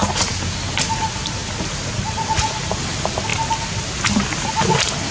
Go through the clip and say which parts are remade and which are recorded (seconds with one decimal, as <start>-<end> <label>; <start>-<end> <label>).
0.0-5.1 recorded